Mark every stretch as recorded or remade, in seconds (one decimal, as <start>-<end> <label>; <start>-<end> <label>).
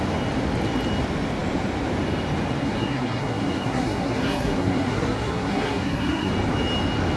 0.0-2.6 recorded; 2.6-6.3 remade; 6.3-7.2 recorded